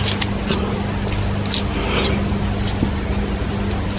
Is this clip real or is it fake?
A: real